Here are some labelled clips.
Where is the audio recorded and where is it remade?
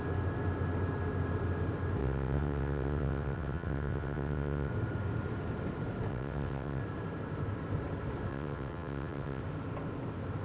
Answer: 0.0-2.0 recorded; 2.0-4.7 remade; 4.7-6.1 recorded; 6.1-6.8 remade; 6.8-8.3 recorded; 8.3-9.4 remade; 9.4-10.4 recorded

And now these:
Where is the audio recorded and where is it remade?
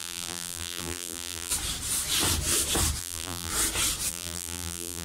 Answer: 0.0-1.5 remade; 1.5-3.0 recorded; 3.0-3.5 remade; 3.5-4.1 recorded; 4.1-5.0 remade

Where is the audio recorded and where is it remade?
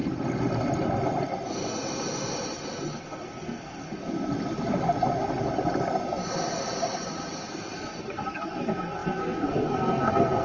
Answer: 0.0-3.0 recorded; 3.0-4.0 remade; 4.0-7.5 recorded; 7.5-10.4 remade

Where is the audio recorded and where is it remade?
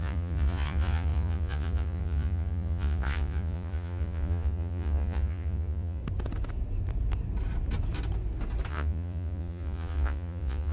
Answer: 0.0-6.0 remade; 6.0-8.7 recorded; 8.7-10.7 remade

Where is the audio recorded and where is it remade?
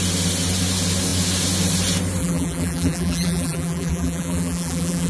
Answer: 0.0-2.2 recorded; 2.2-5.1 remade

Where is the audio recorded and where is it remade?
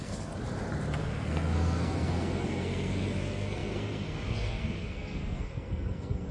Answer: 0.0-0.4 remade; 0.4-1.0 recorded; 1.0-6.3 remade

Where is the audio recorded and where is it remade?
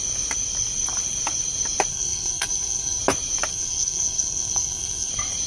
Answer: 0.0-1.9 recorded; 1.9-3.0 remade; 3.0-3.5 recorded; 3.5-5.1 remade; 5.1-5.5 recorded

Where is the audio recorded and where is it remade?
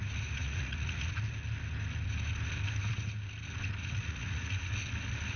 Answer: 0.0-0.4 recorded; 0.4-1.1 remade; 1.1-3.8 recorded; 3.8-4.7 remade; 4.7-5.4 recorded